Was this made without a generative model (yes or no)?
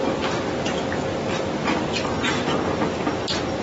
yes